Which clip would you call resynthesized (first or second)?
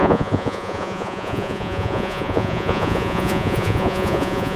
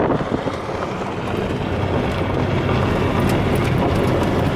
first